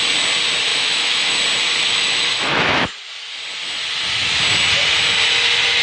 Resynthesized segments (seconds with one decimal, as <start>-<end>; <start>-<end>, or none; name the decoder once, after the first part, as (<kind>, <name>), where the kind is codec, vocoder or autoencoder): 0.7-1.3 (autoencoder, DAC-VAE); 1.8-2.9